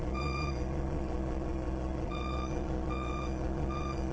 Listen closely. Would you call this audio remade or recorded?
remade